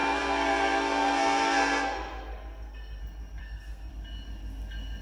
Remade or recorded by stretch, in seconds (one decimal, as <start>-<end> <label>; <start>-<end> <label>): 0.0-3.0 remade; 3.0-3.4 recorded; 3.4-3.9 remade; 3.9-5.0 recorded